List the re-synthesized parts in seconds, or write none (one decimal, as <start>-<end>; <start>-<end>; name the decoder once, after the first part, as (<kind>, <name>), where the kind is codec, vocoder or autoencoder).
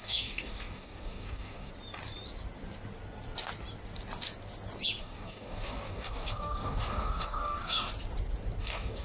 0.0-1.7 (codec, DAC); 5.0-7.9; 8.6-9.0